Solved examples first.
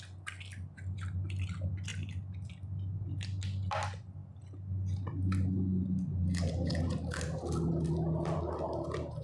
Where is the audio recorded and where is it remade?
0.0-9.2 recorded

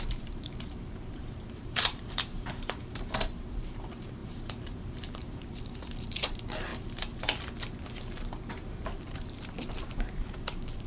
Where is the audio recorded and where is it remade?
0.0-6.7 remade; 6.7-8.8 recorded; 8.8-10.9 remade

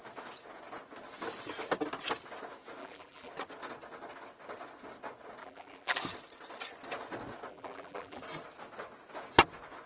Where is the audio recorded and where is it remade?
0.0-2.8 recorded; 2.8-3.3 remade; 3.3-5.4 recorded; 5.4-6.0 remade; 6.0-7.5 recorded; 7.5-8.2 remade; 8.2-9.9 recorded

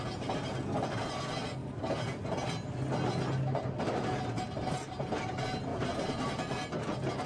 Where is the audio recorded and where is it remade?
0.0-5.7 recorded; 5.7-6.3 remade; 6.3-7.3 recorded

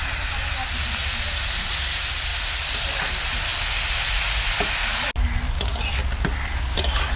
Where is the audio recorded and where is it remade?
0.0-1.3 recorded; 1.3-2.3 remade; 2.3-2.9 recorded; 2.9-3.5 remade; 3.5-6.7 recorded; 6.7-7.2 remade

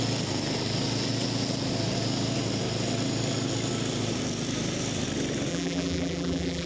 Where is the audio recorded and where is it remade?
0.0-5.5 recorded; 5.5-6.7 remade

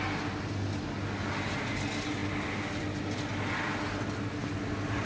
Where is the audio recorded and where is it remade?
0.0-5.1 recorded

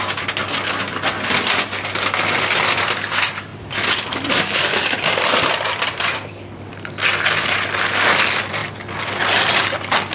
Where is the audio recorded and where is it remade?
0.0-3.5 recorded; 3.5-6.7 remade; 6.7-10.1 recorded